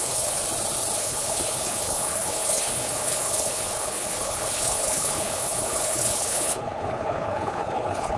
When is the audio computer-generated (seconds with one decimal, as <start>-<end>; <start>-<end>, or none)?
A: 0.0-0.4; 1.0-8.2